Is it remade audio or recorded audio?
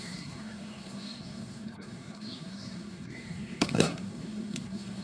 remade